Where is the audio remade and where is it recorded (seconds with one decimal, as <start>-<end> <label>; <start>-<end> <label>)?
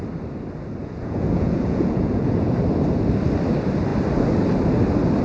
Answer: 0.0-0.8 recorded; 0.8-2.5 remade; 2.5-5.2 recorded